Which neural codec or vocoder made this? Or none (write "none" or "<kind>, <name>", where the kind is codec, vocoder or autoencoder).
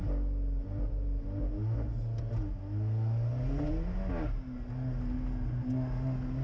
none